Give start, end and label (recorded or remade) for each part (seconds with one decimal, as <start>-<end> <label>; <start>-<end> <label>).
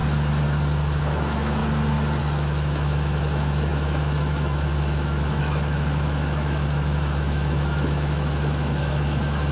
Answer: 0.0-1.0 recorded; 1.0-1.6 remade; 1.6-2.2 recorded; 2.2-9.5 remade